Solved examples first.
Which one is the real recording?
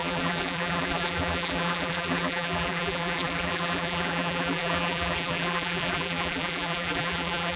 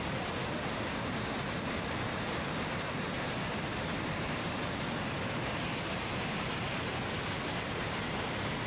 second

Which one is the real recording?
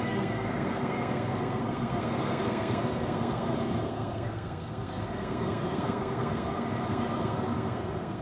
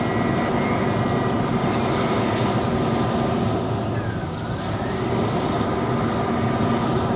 second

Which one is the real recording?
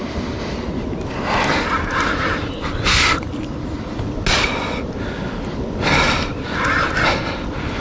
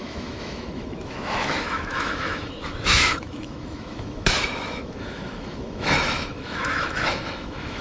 first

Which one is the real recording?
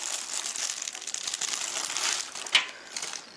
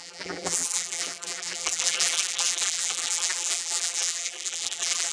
first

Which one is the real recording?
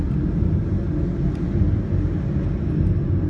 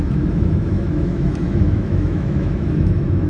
first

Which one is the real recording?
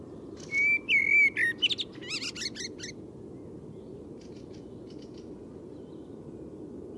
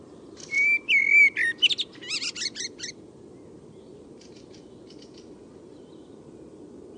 first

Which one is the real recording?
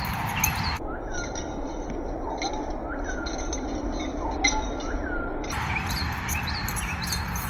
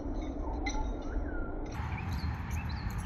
first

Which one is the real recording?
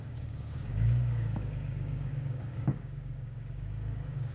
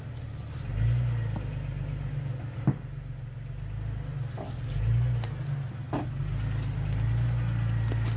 second